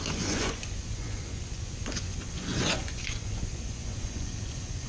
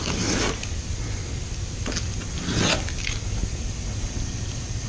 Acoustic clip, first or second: second